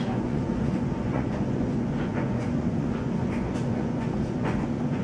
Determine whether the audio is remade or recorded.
remade